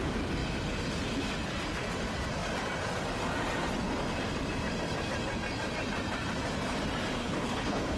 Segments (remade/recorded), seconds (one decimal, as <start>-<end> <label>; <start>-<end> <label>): 0.0-7.2 recorded; 7.2-8.0 remade